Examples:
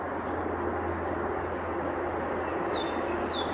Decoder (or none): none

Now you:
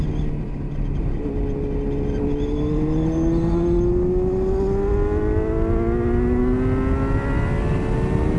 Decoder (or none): none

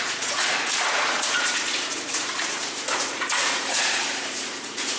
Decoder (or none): vocoder, Vocos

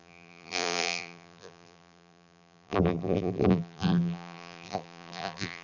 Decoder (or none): vocoder, BigVGAN v2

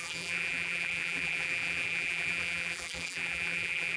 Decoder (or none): vocoder, BigVGAN v2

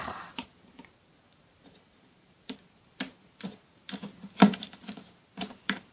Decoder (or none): vocoder, BigVGAN v2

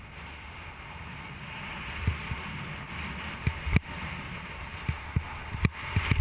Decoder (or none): none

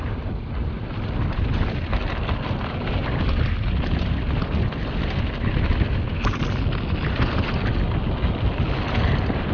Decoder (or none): none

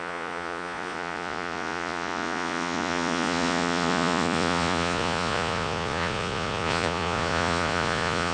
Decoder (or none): vocoder, Vocos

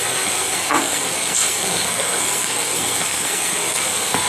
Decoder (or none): codec, SNAC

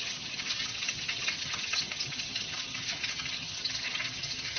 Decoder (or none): vocoder, HiFi-GAN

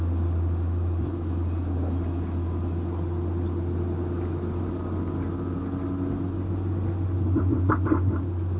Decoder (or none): none